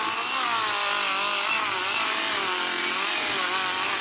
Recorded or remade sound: recorded